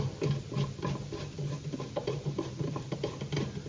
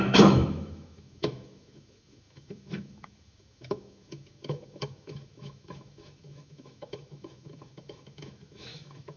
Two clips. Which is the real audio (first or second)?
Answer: first